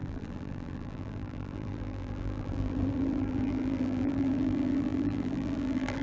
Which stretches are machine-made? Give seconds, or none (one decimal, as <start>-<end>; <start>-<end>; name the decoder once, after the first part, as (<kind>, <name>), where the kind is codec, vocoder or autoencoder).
0.0-6.0 (vocoder, BigVGAN v2)